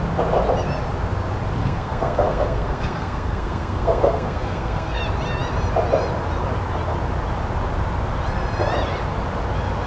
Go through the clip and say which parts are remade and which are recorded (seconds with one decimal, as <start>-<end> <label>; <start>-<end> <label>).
0.0-1.6 recorded; 1.6-5.0 remade; 5.0-9.9 recorded